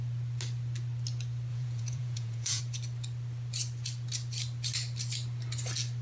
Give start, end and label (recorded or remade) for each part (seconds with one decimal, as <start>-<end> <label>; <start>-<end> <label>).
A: 0.0-1.5 recorded; 1.5-2.6 remade; 2.6-6.0 recorded